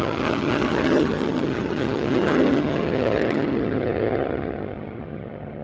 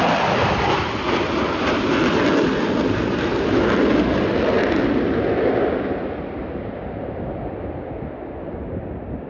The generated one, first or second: first